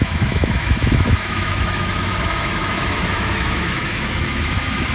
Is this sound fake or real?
fake